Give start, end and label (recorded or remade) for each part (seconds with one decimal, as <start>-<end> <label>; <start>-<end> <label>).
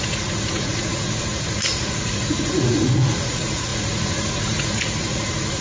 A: 0.0-5.6 remade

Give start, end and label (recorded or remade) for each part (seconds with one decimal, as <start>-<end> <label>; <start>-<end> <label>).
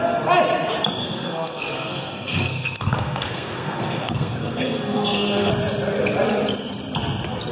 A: 0.0-1.0 recorded; 1.0-5.5 remade; 5.5-7.5 recorded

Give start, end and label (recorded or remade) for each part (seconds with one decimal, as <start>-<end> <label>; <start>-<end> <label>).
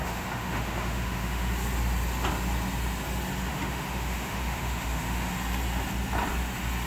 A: 0.0-1.5 remade; 1.5-3.5 recorded; 3.5-5.3 remade; 5.3-6.9 recorded